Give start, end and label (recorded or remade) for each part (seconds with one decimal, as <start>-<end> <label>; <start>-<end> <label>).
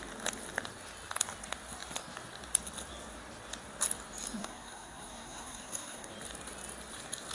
0.0-4.4 recorded; 4.4-6.1 remade; 6.1-7.3 recorded